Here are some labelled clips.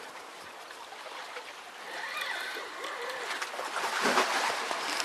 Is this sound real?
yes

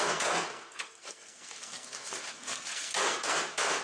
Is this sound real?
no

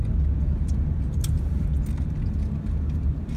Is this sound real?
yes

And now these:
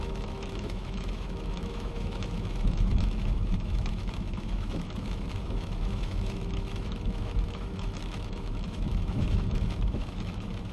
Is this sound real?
no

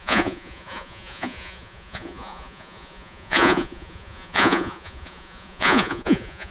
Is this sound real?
no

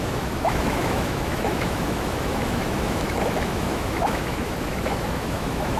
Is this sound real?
no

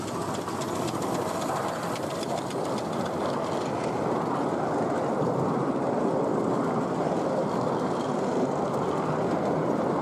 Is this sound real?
yes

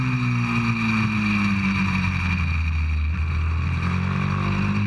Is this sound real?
yes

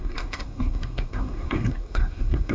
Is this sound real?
no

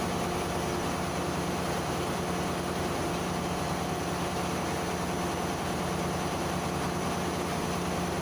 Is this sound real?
yes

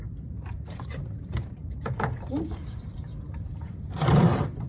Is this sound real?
no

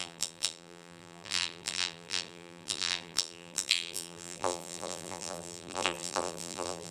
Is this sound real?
no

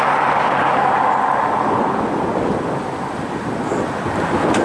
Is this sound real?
yes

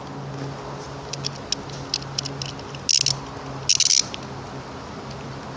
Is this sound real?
yes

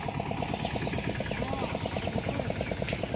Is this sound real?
yes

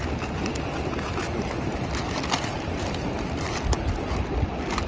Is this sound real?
yes